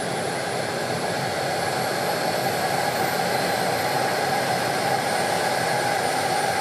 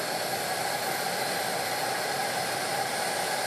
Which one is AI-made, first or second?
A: second